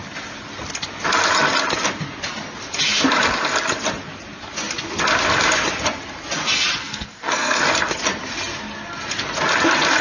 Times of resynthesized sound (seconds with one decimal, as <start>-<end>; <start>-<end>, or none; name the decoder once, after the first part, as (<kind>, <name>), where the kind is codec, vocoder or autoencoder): 6.8-7.6 (codec, SNAC)